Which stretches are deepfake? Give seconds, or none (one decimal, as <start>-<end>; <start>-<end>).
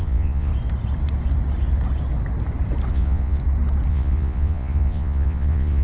0.0-0.5; 2.9-3.4; 3.9-5.8